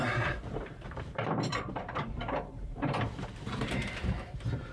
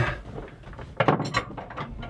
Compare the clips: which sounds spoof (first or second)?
first